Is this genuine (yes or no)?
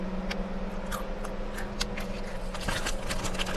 yes